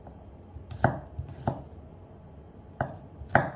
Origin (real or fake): real